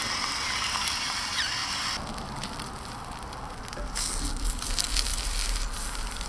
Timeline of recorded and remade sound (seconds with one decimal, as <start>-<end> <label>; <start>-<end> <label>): 0.0-5.1 recorded; 5.1-6.3 remade